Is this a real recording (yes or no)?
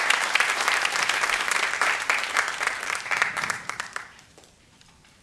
no